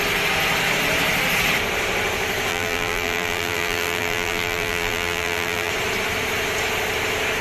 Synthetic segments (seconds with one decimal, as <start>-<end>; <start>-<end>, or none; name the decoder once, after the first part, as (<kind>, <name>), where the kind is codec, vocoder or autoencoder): 2.5-5.7 (vocoder, BigVGAN v2)